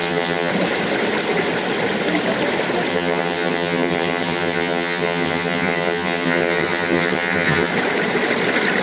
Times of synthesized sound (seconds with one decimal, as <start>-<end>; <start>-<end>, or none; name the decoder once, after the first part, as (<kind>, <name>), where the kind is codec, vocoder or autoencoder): 0.0-0.5 (vocoder, HiFi-GAN); 2.9-7.7